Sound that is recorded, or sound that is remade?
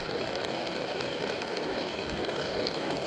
remade